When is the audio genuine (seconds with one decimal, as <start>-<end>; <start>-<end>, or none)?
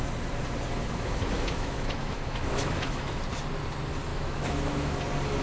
0.0-0.7; 3.2-4.1; 5.0-5.4